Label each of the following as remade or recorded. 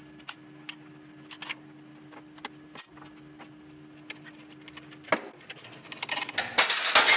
recorded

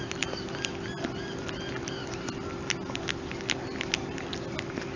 recorded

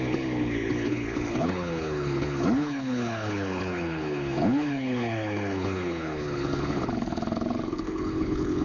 remade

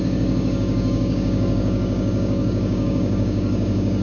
remade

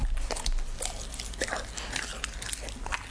recorded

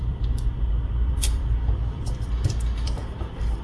remade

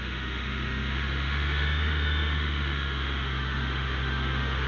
remade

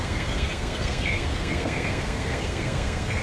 remade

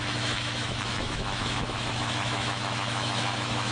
remade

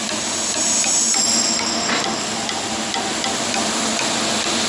recorded